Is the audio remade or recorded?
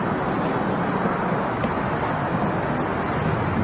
recorded